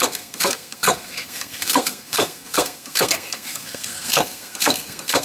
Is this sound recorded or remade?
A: remade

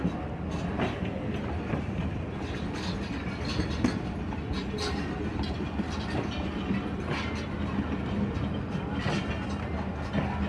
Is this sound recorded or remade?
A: recorded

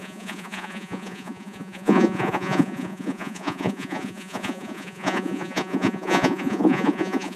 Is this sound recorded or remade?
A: remade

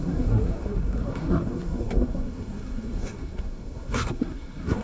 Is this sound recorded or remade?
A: remade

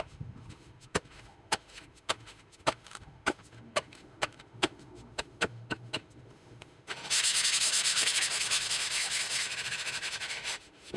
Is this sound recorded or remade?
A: remade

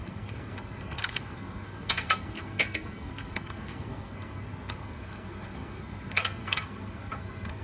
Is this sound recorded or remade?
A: remade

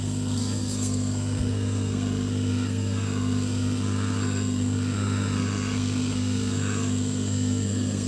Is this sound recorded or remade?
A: remade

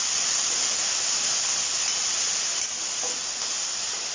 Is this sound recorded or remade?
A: recorded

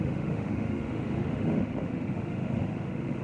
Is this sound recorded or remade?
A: remade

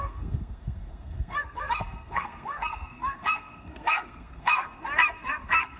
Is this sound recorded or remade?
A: remade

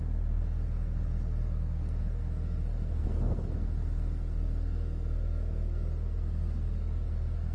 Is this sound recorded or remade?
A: remade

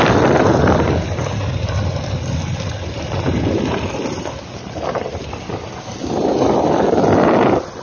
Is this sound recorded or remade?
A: remade